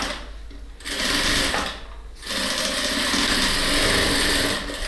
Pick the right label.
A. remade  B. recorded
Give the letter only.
B